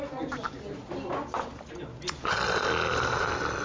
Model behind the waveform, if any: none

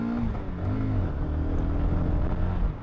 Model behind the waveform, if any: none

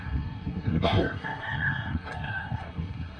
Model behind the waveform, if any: codec, SNAC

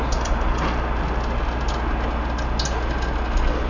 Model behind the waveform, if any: none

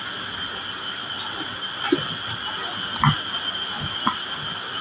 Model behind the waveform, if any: none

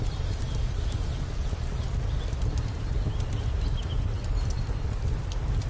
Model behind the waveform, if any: none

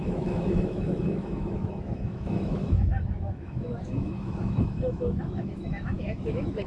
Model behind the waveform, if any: autoencoder, DAC-VAE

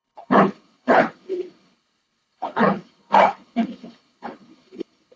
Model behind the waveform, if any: codec, HILCodec